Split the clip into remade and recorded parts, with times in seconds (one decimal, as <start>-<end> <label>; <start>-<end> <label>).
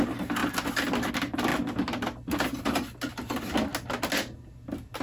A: 0.0-5.0 recorded